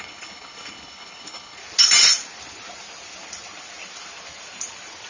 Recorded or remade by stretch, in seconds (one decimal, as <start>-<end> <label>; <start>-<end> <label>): 0.0-1.6 remade; 1.6-5.1 recorded